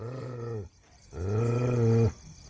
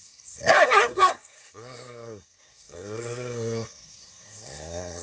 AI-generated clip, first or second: second